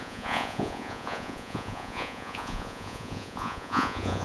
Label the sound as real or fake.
fake